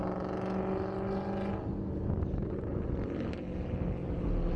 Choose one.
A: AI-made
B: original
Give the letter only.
B